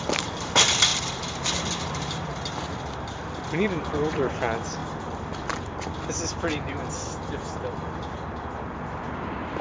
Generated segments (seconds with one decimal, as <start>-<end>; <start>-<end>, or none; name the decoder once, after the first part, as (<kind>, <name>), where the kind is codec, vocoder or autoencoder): 0.0-0.9 (vocoder, BigVGAN v2); 1.5-2.3; 3.1-9.6